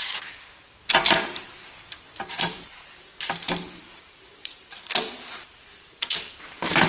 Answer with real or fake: fake